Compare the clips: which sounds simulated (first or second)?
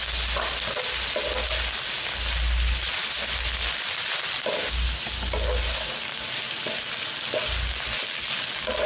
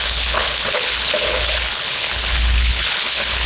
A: second